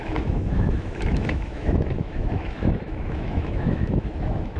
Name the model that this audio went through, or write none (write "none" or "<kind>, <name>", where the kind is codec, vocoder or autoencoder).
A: autoencoder, DAC-VAE